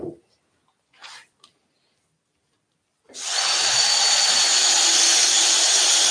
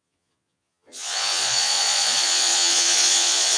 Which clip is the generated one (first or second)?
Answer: second